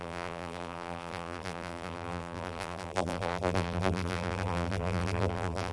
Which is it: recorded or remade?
remade